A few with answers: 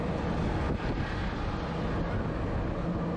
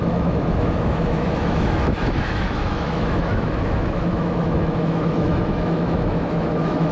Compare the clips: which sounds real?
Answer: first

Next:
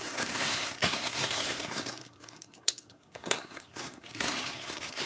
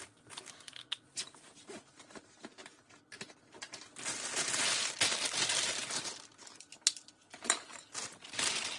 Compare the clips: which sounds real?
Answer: second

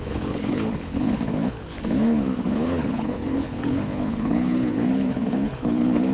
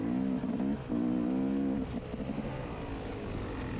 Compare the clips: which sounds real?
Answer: second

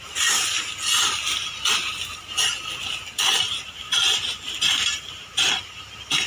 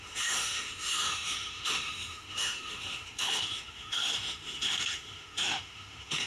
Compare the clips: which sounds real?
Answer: first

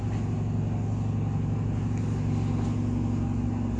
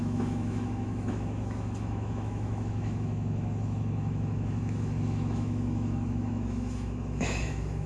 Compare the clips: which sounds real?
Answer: first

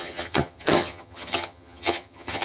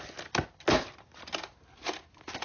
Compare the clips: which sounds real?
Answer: second